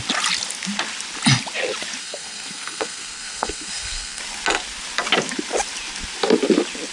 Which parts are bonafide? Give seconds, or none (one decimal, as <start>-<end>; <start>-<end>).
0.0-2.0; 4.2-6.9